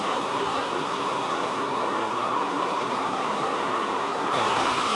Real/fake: fake